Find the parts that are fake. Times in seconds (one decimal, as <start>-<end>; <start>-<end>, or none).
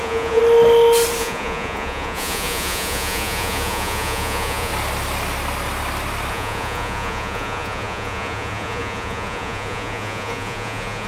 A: 0.0-0.4; 1.2-4.7; 6.3-11.1